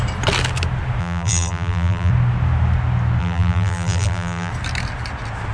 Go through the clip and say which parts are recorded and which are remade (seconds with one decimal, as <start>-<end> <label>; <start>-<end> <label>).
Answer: 0.0-1.0 recorded; 1.0-2.1 remade; 2.1-3.2 recorded; 3.2-4.5 remade; 4.5-5.5 recorded